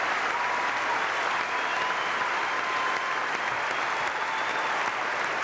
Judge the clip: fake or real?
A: real